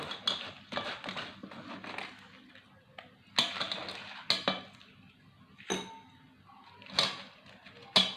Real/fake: real